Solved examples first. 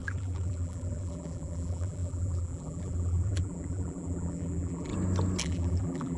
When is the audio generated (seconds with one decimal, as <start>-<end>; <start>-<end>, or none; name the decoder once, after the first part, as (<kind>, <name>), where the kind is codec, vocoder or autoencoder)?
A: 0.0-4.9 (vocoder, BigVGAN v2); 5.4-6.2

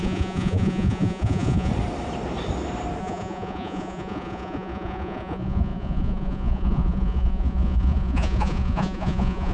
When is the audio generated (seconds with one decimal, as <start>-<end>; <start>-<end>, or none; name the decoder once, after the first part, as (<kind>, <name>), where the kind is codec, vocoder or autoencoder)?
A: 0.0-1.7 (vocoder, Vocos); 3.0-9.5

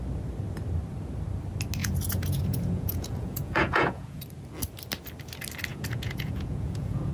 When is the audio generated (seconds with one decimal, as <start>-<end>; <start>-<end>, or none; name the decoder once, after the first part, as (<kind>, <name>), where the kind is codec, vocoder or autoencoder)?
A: 1.8-4.2 (vocoder, Vocos); 5.7-7.1